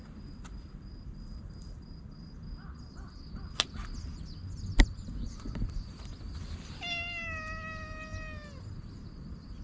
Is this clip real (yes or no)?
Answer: yes